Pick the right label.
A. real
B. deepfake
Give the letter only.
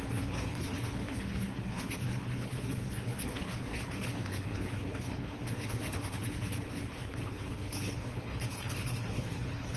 B